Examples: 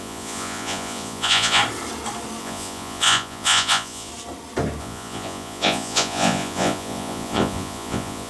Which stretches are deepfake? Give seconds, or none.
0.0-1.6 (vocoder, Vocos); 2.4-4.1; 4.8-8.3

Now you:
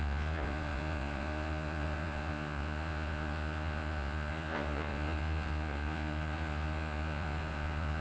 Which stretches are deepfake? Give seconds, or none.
0.0-8.0 (vocoder, Vocos)

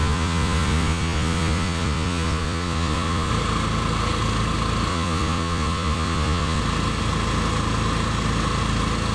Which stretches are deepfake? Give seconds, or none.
0.0-3.3 (vocoder, Vocos); 4.9-6.6

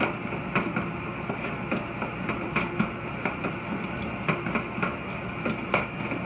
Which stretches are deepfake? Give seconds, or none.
none

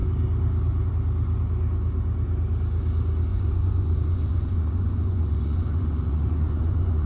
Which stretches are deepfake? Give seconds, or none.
3.3-7.1 (vocoder, Vocos)